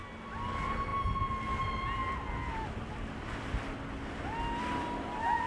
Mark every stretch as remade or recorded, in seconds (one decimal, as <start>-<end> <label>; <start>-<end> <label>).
0.0-5.5 recorded